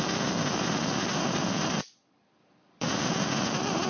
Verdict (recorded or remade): remade